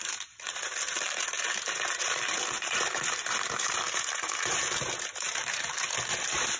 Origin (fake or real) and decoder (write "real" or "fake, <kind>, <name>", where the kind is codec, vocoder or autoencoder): fake, vocoder, BigVGAN v2